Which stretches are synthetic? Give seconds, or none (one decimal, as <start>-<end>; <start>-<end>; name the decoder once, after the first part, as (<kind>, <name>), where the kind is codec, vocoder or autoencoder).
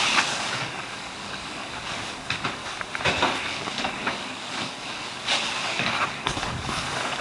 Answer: 0.0-2.6 (codec, DAC); 3.1-7.2